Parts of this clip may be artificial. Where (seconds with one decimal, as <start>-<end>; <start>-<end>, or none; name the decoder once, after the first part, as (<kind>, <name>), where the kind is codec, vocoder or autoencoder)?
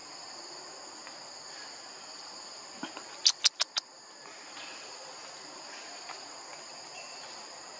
none